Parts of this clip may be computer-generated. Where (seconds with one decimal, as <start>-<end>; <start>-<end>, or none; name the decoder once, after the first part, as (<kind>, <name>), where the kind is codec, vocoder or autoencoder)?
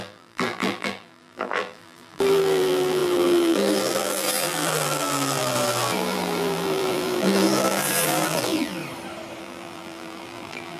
0.0-8.8 (vocoder, BigVGAN v2); 9.4-10.8